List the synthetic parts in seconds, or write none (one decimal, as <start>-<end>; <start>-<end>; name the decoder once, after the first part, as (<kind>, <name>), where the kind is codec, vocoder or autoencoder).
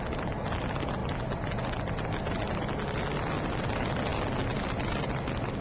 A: none